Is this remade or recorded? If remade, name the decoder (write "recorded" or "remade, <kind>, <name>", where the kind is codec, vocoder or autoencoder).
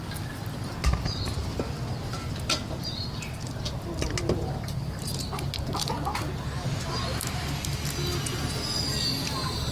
recorded